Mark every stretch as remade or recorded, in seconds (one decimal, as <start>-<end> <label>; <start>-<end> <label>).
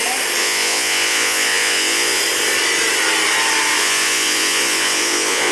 0.0-0.4 recorded; 0.4-2.2 remade; 2.2-3.8 recorded; 3.8-5.5 remade